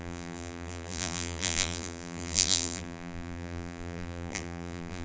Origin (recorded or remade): remade